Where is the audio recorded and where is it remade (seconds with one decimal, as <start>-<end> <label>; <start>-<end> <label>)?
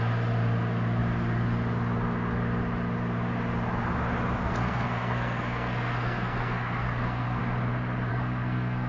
0.0-4.4 recorded; 4.4-7.4 remade; 7.4-8.1 recorded; 8.1-8.9 remade